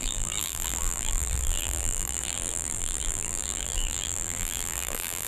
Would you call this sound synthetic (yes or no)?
yes